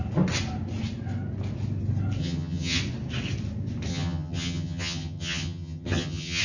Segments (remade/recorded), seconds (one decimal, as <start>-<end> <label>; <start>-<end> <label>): 0.0-2.2 recorded; 2.2-2.8 remade; 2.8-3.9 recorded; 3.9-6.4 remade